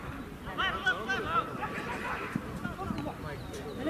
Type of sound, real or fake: real